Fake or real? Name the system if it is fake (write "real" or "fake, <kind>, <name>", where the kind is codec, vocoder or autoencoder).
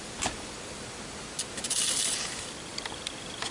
real